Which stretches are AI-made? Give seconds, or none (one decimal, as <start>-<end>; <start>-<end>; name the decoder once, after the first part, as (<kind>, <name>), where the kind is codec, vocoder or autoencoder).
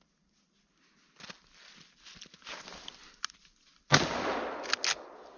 none